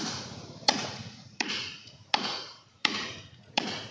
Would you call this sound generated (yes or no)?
yes